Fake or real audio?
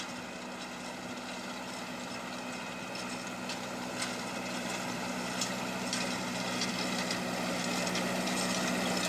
real